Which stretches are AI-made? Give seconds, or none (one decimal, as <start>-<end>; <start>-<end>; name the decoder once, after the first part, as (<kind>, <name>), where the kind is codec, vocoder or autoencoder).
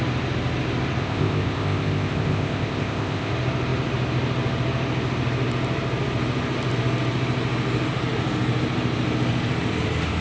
1.0-3.3 (codec, ZipCodec)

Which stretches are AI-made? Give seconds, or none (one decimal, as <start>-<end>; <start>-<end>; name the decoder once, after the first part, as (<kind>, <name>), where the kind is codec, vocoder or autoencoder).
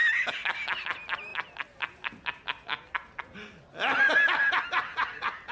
none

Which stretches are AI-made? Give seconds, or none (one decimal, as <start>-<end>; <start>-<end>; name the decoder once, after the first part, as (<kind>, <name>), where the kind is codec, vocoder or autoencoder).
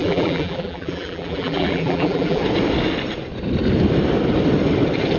0.0-2.4 (vocoder, BigVGAN v2)